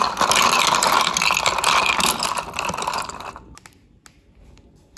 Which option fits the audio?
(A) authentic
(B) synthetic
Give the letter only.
A